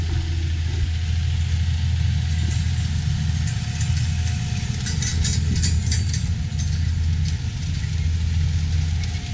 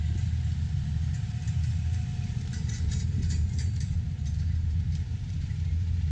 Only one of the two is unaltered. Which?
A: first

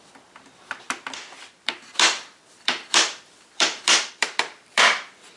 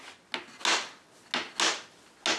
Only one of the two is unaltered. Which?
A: second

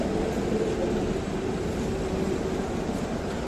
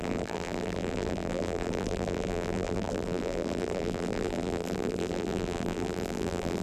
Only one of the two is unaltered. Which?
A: first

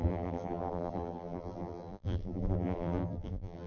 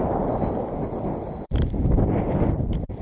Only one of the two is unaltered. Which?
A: second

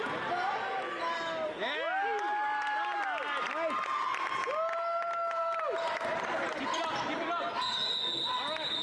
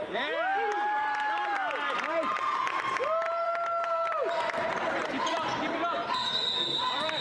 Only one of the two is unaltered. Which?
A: first